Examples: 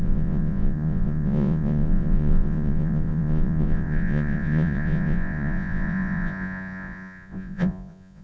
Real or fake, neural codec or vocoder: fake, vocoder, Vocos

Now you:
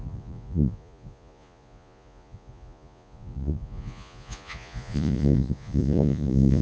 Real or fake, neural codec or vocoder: fake, vocoder, Vocos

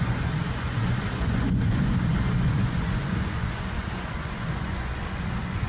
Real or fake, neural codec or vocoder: fake, vocoder, Vocos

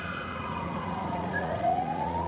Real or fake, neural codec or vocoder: fake, vocoder, Vocos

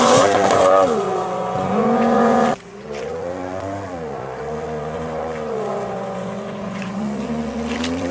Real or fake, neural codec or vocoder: fake, vocoder, Vocos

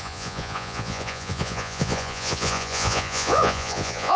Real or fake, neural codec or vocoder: fake, vocoder, Vocos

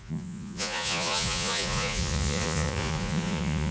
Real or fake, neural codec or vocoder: fake, vocoder, Vocos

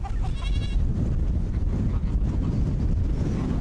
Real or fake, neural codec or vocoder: real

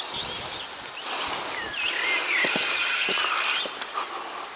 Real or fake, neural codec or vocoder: real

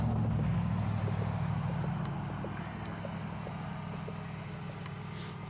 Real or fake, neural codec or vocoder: real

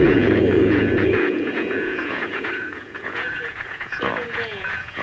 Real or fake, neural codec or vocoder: fake, vocoder, Vocos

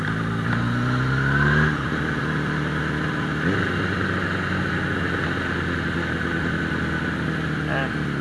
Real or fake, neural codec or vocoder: real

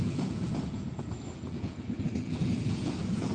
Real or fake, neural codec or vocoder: fake, vocoder, Vocos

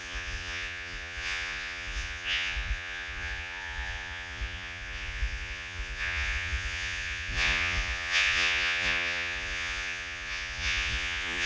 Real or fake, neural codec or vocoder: fake, vocoder, Vocos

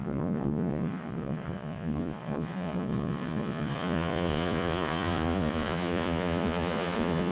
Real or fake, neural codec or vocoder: fake, vocoder, Vocos